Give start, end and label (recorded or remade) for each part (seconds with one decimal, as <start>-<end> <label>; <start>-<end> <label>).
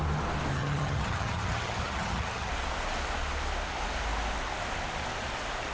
0.0-0.5 recorded; 0.5-2.5 remade; 2.5-5.7 recorded